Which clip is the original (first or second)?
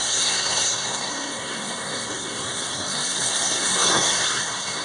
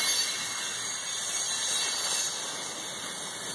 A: second